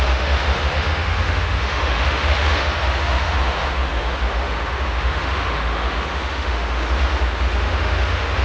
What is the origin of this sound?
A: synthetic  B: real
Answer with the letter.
A